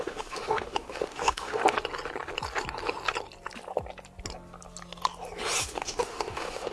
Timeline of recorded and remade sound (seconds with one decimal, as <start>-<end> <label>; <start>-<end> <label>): 0.0-1.6 remade; 1.6-5.6 recorded; 5.6-6.7 remade

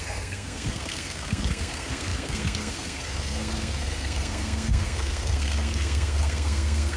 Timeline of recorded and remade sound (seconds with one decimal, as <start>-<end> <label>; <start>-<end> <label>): 0.0-7.0 remade

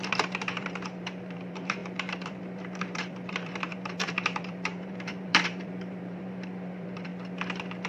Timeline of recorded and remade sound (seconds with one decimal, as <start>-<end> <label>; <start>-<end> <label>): 0.0-7.1 remade; 7.1-7.9 recorded

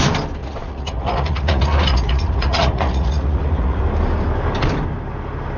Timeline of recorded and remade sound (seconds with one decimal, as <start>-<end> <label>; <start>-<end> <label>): 0.0-0.4 recorded; 0.4-3.8 remade; 3.8-5.6 recorded

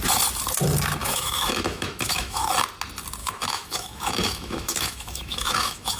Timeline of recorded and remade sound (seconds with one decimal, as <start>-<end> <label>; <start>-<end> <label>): 0.0-1.0 recorded; 1.0-2.5 remade; 2.5-3.2 recorded; 3.2-6.0 remade